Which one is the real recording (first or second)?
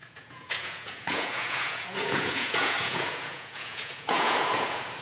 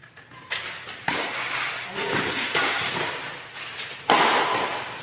second